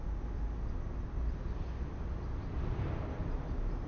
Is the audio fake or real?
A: real